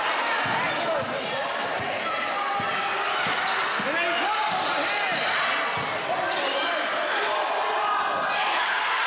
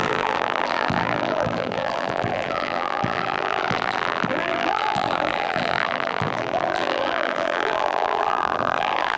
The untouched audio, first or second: first